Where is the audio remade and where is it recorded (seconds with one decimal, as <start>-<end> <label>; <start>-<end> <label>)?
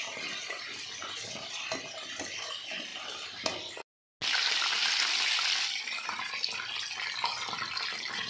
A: 0.0-8.3 recorded